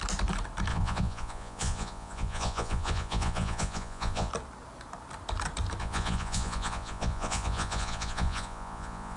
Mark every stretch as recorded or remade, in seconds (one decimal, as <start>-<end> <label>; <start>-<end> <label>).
0.0-0.7 recorded; 0.7-4.3 remade; 4.3-5.8 recorded; 5.8-9.2 remade